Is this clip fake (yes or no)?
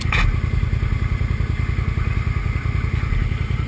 no